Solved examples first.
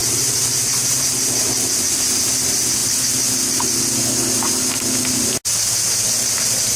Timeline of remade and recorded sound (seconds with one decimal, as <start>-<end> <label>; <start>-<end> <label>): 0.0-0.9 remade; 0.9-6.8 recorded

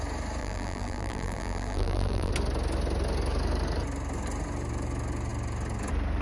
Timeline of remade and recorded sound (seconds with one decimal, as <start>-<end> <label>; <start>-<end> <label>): 0.0-0.4 recorded; 0.4-2.3 remade; 2.3-6.2 recorded

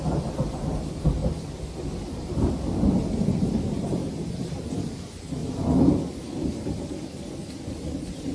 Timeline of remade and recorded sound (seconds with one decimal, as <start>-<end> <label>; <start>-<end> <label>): 0.0-1.2 remade; 1.2-2.5 recorded; 2.5-4.0 remade; 4.0-4.6 recorded; 4.6-5.4 remade; 5.4-6.1 recorded; 6.1-8.3 remade

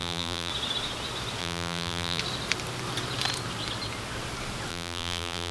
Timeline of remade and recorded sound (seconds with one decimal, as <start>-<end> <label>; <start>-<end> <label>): 0.0-0.5 remade; 0.5-1.4 recorded; 1.4-2.2 remade; 2.2-4.7 recorded; 4.7-5.5 remade

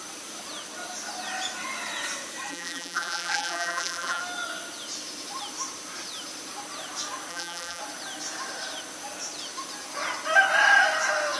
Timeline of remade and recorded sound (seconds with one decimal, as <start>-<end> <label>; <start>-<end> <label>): 0.0-2.5 recorded; 2.5-4.2 remade; 4.2-7.3 recorded; 7.3-7.8 remade; 7.8-11.4 recorded

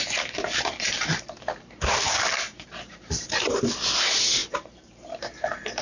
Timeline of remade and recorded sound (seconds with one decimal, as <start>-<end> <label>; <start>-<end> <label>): 0.0-3.5 remade; 3.5-4.4 recorded; 4.4-5.2 remade; 5.2-5.8 recorded